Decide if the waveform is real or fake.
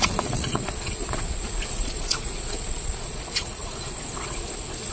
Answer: fake